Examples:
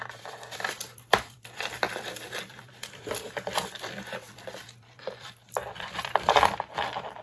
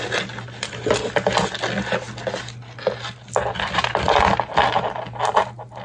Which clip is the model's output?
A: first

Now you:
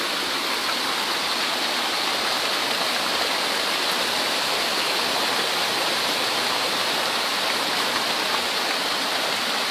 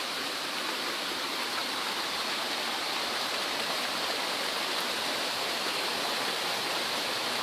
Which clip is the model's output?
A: second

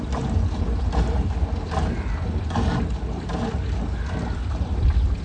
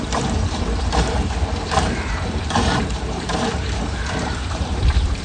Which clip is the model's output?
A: second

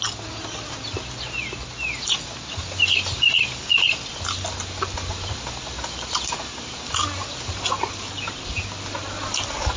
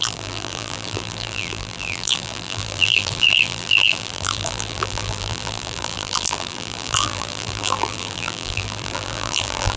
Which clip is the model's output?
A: second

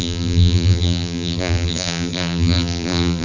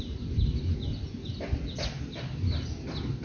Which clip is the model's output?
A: first